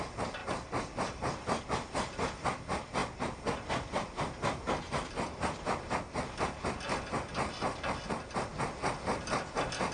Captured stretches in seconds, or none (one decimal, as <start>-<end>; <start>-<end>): 0.0-0.4; 1.6-9.9